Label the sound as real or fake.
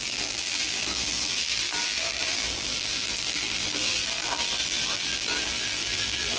fake